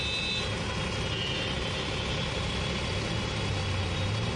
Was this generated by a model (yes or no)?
no